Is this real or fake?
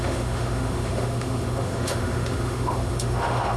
fake